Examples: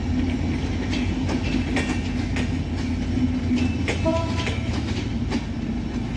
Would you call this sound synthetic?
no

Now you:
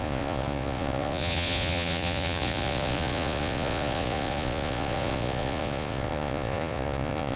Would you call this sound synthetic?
yes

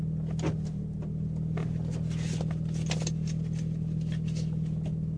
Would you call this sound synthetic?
no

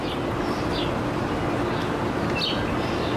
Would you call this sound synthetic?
no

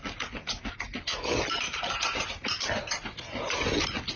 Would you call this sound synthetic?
no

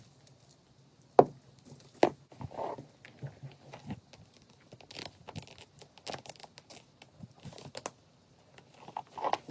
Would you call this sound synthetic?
no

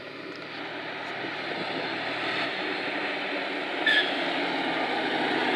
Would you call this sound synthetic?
no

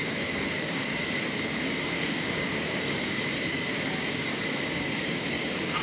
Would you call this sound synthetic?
yes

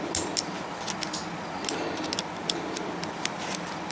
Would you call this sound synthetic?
no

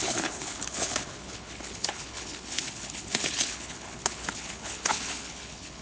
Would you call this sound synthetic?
yes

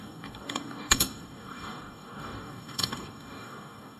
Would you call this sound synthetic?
yes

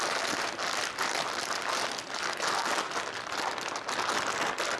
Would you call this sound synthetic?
no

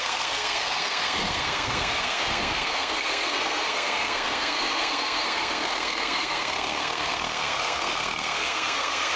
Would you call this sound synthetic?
yes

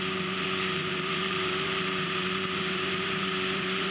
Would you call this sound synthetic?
yes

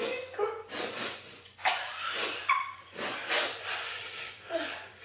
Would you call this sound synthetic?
yes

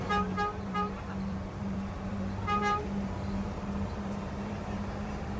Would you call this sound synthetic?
yes